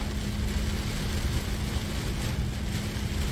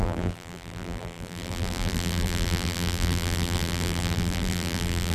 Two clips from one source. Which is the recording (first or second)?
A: first